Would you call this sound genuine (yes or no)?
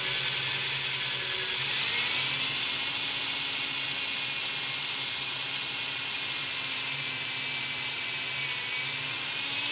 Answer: yes